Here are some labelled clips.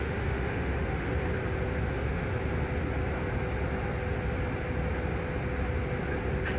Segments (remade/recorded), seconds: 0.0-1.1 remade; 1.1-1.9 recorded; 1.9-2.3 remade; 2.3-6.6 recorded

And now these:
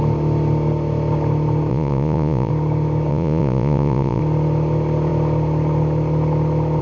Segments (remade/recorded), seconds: 0.0-1.7 recorded; 1.7-2.5 remade; 2.5-3.1 recorded; 3.1-4.2 remade; 4.2-6.8 recorded

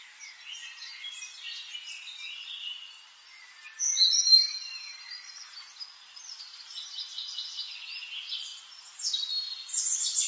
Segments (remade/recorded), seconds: 0.0-10.3 recorded